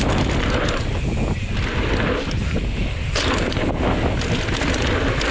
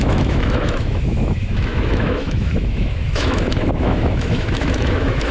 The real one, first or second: first